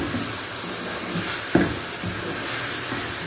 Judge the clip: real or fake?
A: real